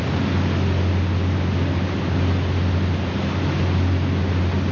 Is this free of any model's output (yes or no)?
yes